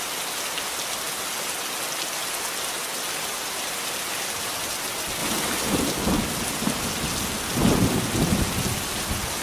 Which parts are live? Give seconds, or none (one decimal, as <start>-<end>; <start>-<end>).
0.0-9.4